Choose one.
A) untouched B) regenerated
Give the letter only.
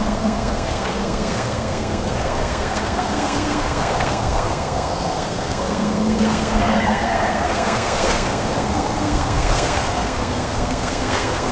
B